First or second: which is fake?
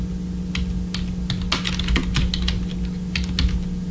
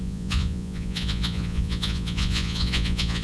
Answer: second